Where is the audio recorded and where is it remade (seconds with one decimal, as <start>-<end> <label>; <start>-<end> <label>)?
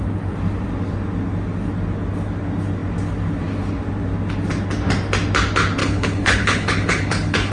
0.0-5.8 recorded; 5.8-7.5 remade